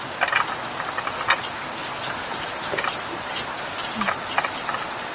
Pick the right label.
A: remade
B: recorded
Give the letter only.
B